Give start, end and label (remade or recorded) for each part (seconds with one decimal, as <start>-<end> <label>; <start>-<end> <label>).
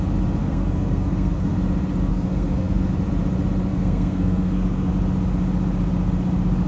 0.0-0.4 recorded; 0.4-1.6 remade; 1.6-2.1 recorded; 2.1-2.9 remade; 2.9-3.7 recorded; 3.7-4.9 remade; 4.9-6.7 recorded